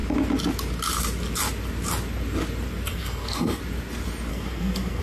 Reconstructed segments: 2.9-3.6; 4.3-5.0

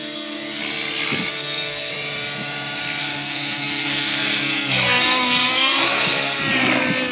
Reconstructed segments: 0.0-0.6; 1.3-1.9; 3.0-6.4

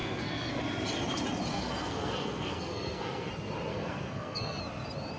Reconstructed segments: 0.0-0.6; 1.5-3.3; 3.7-4.6